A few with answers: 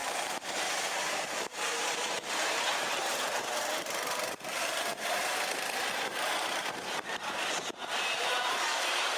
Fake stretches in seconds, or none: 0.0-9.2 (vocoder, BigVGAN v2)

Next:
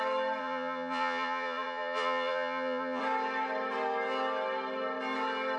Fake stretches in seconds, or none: 0.4-3.0 (vocoder, Vocos)

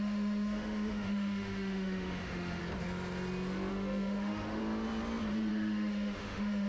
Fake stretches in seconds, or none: 0.0-2.6 (autoencoder, DAC-VAE); 3.7-4.6; 5.5-6.7

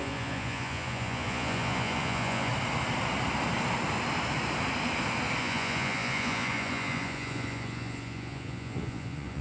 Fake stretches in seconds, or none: 0.0-2.5 (vocoder, Vocos); 5.4-9.4

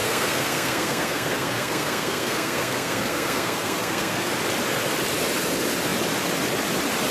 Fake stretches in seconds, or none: 0.0-4.3 (codec, SNAC)

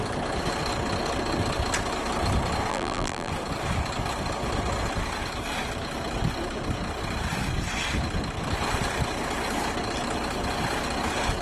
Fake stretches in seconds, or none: 2.7-3.3 (vocoder, BigVGAN v2)

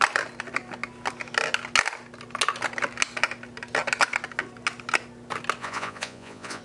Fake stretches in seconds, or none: 5.6-6.6 (vocoder, Vocos)